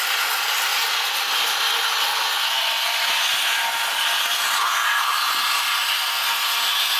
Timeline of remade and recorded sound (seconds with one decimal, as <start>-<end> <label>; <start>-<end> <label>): 0.0-7.0 recorded